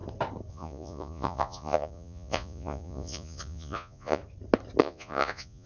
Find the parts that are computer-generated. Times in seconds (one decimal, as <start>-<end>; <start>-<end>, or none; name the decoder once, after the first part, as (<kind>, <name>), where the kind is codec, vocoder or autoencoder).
0.5-4.2 (vocoder, Vocos); 4.8-5.7

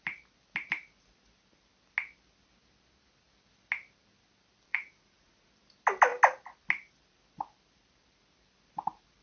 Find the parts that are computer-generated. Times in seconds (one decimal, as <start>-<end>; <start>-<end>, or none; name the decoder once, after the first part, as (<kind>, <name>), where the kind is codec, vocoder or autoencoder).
4.7-5.5 (vocoder, Vocos)

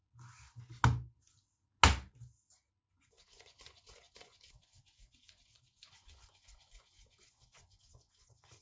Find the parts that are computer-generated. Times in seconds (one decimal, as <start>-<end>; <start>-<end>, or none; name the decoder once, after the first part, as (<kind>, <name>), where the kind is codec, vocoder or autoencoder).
2.9-8.6 (vocoder, Vocos)

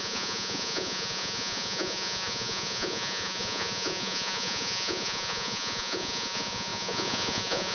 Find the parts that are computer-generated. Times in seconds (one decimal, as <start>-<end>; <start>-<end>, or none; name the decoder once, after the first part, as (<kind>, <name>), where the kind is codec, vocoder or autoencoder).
0.0-7.7 (vocoder, Vocos)

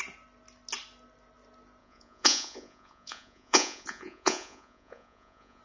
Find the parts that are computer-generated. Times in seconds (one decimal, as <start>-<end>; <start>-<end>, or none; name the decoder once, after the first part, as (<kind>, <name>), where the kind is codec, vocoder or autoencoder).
1.8-5.6 (vocoder, Vocos)

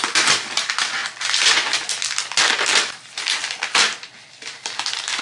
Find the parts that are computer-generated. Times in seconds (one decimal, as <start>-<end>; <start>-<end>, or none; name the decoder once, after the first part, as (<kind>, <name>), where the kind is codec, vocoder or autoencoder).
none

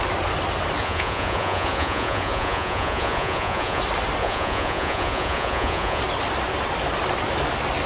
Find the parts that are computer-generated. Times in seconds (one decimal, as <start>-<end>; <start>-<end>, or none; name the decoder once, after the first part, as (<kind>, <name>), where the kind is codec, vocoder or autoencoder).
0.8-3.8 (vocoder, Vocos); 4.2-6.0

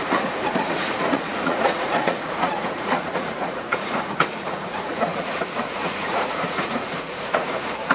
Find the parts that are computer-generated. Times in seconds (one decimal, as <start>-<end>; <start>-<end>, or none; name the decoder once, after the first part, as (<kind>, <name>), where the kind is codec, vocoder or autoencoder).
0.0-7.9 (vocoder, Vocos)